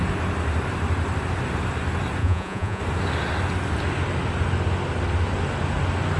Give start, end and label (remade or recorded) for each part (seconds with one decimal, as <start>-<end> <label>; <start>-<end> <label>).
0.0-2.2 recorded; 2.2-2.8 remade; 2.8-6.2 recorded